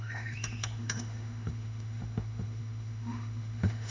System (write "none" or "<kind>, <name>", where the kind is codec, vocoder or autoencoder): autoencoder, DAC-VAE